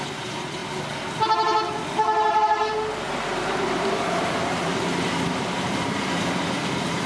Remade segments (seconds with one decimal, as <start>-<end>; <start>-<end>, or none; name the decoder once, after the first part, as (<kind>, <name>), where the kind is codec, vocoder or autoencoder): 0.0-0.6 (vocoder, BigVGAN v2); 3.7-4.7; 5.3-7.1